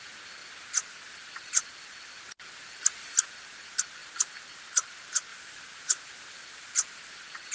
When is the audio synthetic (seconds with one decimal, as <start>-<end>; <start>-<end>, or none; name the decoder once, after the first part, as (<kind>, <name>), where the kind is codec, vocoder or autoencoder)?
5.3-7.1 (vocoder, BigVGAN v2)